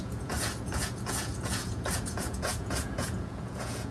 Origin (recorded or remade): remade